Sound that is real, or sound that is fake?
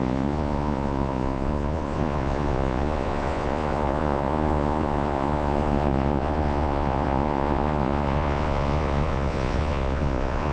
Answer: fake